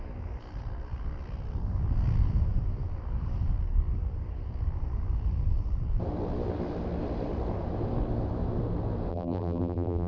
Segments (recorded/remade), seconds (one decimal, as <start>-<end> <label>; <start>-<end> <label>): 0.0-9.1 recorded; 9.1-10.1 remade